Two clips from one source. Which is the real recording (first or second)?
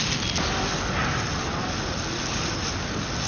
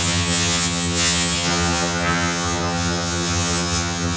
first